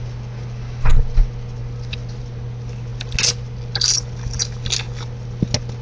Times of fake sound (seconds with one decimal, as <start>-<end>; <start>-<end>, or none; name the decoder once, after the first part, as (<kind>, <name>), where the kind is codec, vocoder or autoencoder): none